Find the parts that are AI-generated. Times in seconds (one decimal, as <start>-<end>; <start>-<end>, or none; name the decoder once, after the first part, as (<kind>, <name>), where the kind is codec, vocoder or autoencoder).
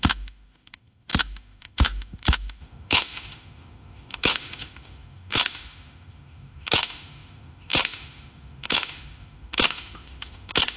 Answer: 0.0-10.8 (autoencoder, DAC-VAE)